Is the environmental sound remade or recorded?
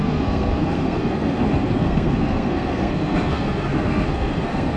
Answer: remade